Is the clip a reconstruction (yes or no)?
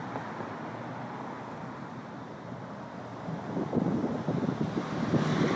no